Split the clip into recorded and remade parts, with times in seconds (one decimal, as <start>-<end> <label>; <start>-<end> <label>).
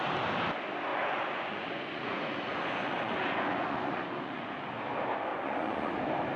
0.0-0.9 recorded; 0.9-4.7 remade; 4.7-5.3 recorded; 5.3-5.9 remade; 5.9-6.4 recorded